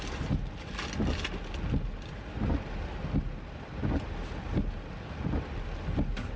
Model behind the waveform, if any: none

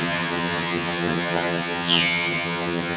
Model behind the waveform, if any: vocoder, HiFi-GAN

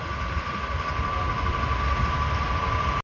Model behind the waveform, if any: none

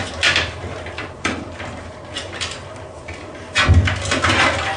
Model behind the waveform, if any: none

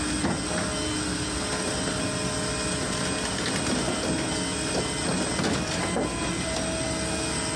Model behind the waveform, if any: none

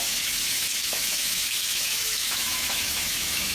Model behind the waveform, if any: autoencoder, DAC-VAE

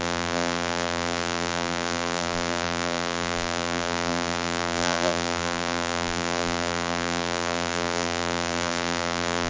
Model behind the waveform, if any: vocoder, BigVGAN v2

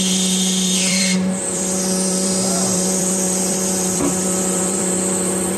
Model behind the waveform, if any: vocoder, BigVGAN v2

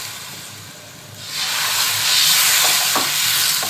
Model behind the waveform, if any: vocoder, BigVGAN v2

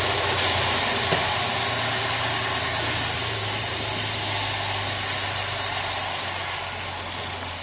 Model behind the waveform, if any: none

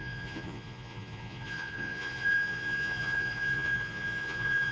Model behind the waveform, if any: vocoder, Vocos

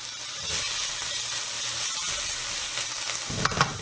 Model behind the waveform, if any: none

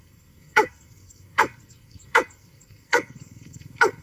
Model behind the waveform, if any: codec, SNAC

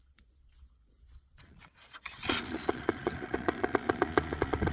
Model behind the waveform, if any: vocoder, Vocos